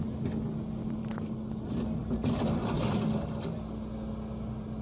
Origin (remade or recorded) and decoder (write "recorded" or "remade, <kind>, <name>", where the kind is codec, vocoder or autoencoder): recorded